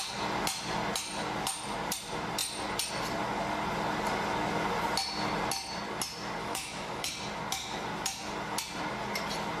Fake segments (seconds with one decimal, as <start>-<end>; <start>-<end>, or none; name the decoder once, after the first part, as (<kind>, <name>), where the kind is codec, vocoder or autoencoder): 6.4-7.1 (autoencoder, DAC-VAE)